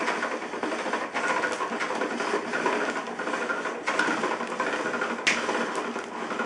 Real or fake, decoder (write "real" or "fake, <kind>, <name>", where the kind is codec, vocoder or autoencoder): real